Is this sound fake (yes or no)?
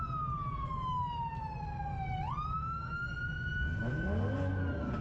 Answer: no